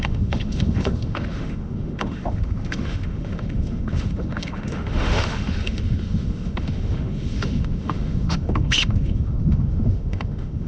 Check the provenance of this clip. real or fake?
fake